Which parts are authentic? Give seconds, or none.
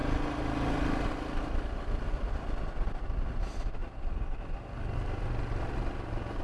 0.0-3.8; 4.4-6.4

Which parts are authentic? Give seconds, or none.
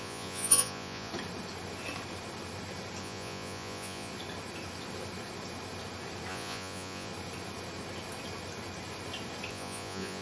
1.1-3.0; 4.1-6.3; 7.1-9.5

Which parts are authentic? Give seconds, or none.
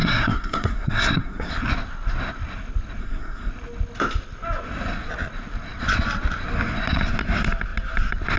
1.5-3.0; 3.5-8.4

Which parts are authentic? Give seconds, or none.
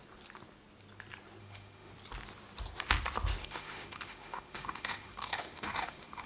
0.0-1.4; 1.9-3.4